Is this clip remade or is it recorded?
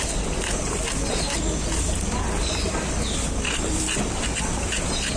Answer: recorded